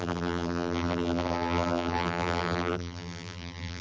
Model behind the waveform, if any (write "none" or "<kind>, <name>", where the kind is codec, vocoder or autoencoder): vocoder, BigVGAN v2